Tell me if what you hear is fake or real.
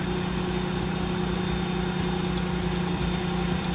real